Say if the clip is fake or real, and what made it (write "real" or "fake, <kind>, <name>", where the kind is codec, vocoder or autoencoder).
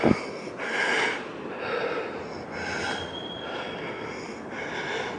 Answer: real